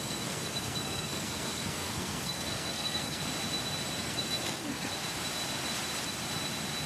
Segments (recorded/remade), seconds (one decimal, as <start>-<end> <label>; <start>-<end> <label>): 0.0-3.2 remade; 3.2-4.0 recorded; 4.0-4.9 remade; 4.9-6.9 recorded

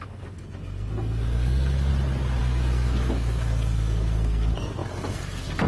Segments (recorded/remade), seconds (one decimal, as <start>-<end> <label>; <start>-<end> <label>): 0.0-1.9 remade; 1.9-2.4 recorded; 2.4-5.7 remade

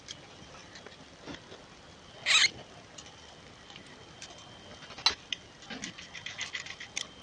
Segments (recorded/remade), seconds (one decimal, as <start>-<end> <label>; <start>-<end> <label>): 0.0-7.2 recorded

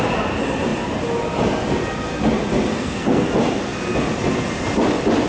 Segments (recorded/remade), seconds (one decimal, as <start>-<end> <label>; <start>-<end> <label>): 0.0-2.7 recorded; 2.7-3.3 remade; 3.3-5.3 recorded

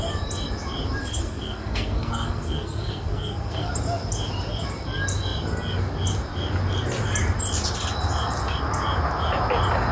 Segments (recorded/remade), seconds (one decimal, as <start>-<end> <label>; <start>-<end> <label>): 0.0-1.0 recorded; 1.0-3.7 remade; 3.7-9.9 recorded

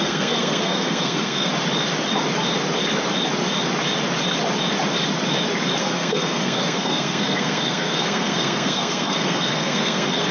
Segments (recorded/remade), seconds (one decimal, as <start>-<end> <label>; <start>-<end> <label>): 0.0-1.5 remade; 1.5-5.8 recorded; 5.8-10.3 remade